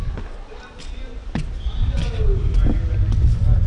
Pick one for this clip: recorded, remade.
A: recorded